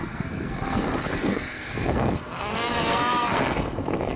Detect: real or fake fake